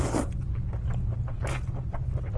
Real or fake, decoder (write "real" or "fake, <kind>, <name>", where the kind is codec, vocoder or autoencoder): real